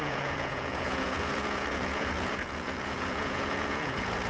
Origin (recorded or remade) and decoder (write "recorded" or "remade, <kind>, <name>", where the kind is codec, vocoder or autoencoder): remade, vocoder, Vocos